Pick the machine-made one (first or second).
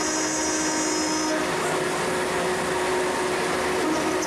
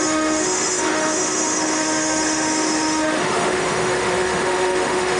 second